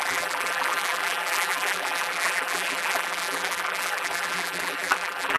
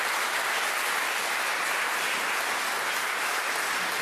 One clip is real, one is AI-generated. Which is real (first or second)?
second